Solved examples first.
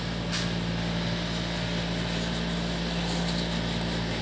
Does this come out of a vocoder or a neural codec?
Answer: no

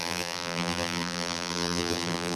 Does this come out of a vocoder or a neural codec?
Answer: yes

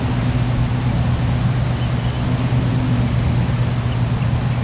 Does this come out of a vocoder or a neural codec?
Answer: no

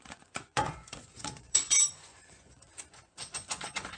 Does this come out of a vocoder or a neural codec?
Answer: yes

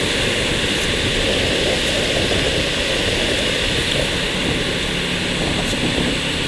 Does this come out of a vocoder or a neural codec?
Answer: no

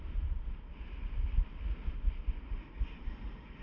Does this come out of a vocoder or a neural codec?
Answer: no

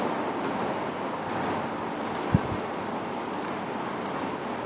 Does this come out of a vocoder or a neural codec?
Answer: no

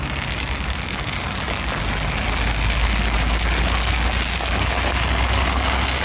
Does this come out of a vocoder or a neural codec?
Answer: no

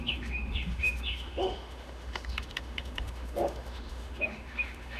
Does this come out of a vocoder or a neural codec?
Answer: yes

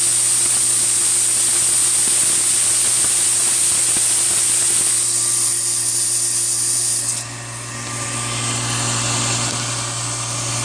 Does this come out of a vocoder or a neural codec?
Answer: no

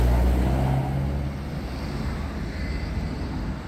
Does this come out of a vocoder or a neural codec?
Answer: no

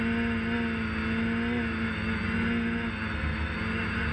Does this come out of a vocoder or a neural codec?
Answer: no